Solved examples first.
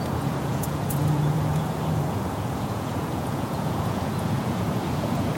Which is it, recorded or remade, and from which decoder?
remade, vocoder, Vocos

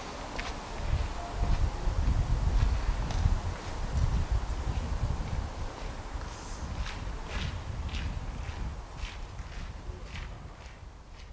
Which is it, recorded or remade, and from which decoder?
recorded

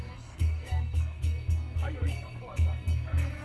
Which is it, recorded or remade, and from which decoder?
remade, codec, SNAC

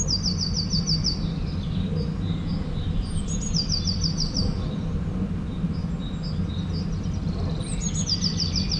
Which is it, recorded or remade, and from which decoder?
recorded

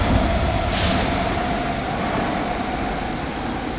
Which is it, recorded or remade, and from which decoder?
recorded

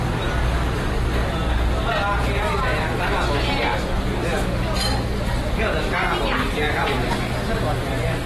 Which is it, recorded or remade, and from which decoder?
recorded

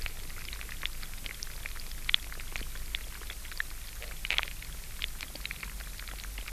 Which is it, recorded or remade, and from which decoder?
recorded